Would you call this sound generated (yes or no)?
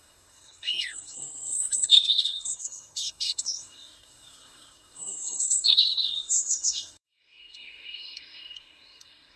yes